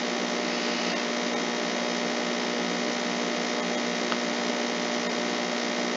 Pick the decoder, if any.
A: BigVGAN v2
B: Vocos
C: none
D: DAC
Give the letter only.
C